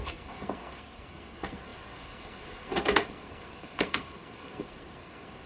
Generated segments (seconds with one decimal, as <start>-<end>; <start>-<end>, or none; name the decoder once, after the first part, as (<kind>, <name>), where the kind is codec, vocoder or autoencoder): 0.0-5.5 (codec, SNAC)